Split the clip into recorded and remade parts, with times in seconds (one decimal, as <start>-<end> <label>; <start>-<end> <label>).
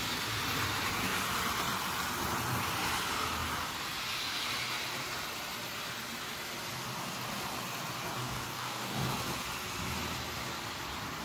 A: 0.0-8.2 recorded; 8.2-9.1 remade; 9.1-11.2 recorded